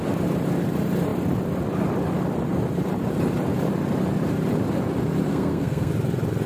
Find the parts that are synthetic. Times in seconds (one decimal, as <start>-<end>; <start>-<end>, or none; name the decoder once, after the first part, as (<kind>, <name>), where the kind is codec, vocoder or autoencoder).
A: 5.3-5.9 (codec, SNAC)